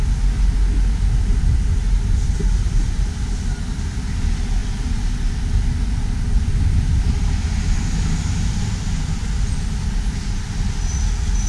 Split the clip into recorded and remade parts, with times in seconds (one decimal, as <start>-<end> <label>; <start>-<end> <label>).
0.0-9.2 recorded; 9.2-9.7 remade; 9.7-11.5 recorded